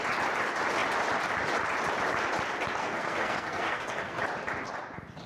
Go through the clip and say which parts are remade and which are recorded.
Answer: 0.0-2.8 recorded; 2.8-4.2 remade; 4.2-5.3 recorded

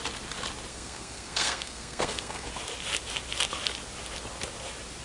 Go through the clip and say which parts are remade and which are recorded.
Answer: 0.0-0.7 recorded; 0.7-2.5 remade; 2.5-5.0 recorded

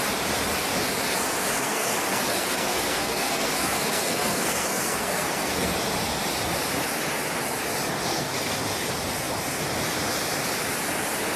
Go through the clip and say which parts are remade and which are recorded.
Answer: 0.0-1.4 recorded; 1.4-5.7 remade; 5.7-8.1 recorded; 8.1-8.6 remade; 8.6-11.4 recorded

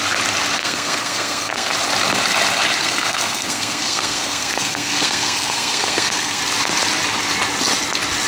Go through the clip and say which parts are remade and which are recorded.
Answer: 0.0-0.6 recorded; 0.6-1.7 remade; 1.7-2.8 recorded; 2.8-6.4 remade; 6.4-8.3 recorded

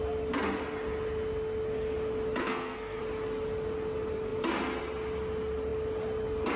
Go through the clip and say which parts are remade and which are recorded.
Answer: 0.0-2.4 recorded; 2.4-3.0 remade; 3.0-6.6 recorded

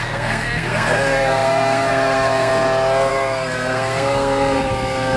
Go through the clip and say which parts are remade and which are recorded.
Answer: 0.0-2.5 remade; 2.5-3.1 recorded; 3.1-5.2 remade

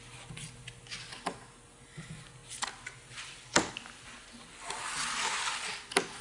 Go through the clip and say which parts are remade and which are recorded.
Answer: 0.0-6.2 recorded